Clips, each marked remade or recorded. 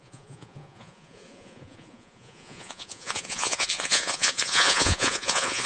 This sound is remade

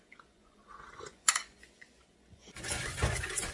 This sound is remade